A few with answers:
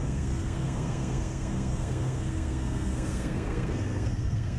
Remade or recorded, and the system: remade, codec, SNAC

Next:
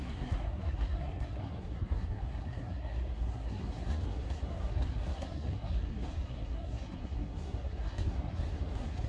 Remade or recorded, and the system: remade, codec, SNAC